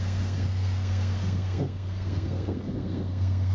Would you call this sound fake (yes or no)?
yes